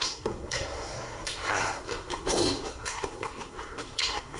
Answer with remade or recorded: remade